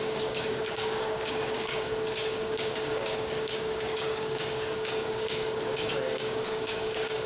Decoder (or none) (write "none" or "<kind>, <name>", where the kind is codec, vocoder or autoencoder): codec, DAC